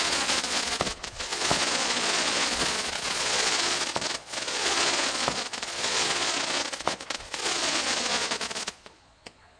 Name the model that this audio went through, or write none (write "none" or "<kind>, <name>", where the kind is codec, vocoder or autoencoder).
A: vocoder, Vocos